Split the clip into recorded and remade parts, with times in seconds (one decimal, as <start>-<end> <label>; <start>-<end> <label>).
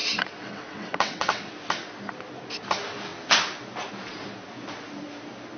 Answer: 0.0-1.5 remade; 1.5-5.6 recorded